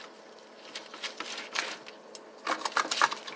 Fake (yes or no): no